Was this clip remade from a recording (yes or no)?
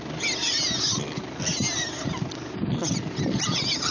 no